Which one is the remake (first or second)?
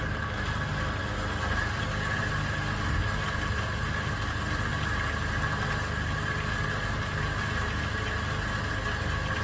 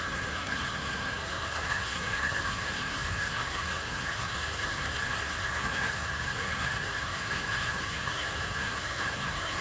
second